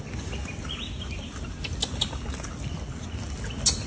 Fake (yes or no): no